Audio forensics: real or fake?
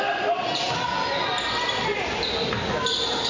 real